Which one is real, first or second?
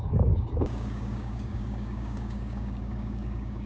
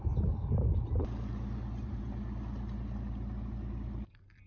second